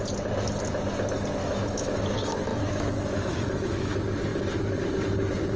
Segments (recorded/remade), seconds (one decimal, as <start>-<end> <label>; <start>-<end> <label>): 0.0-1.4 recorded; 1.4-2.0 remade; 2.0-2.5 recorded; 2.5-3.9 remade; 3.9-5.6 recorded